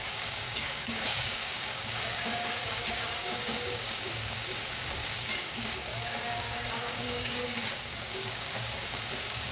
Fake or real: fake